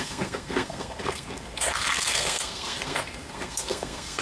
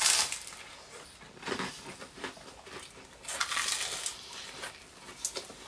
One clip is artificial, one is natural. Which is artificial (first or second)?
first